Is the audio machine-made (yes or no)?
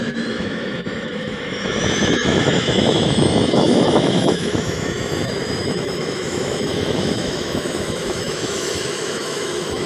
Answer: yes